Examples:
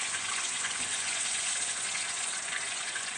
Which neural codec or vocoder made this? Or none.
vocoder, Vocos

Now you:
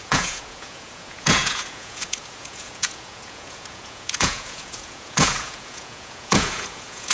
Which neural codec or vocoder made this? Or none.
vocoder, Vocos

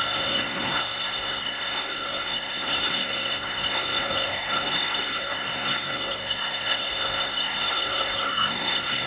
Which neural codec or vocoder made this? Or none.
codec, SNAC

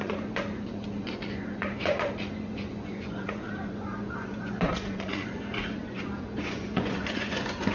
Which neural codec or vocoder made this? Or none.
vocoder, Vocos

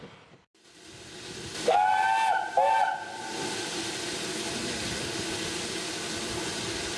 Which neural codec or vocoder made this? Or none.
none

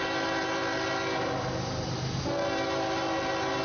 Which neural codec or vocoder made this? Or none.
none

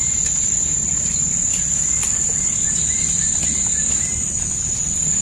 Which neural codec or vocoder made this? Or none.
none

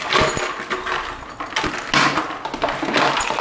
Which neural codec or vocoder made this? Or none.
none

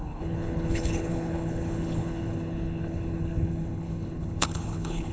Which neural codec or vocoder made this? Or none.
codec, HILCodec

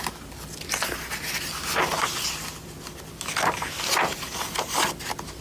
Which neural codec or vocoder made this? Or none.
none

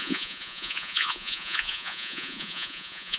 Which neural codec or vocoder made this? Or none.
vocoder, Vocos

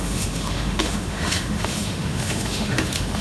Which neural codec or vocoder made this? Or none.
autoencoder, DAC-VAE